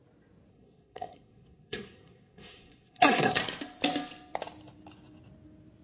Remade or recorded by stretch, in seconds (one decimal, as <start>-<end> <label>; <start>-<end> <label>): 0.0-0.5 recorded; 0.5-3.4 remade; 3.4-5.8 recorded